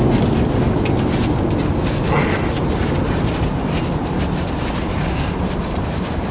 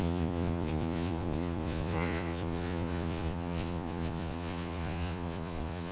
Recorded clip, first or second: first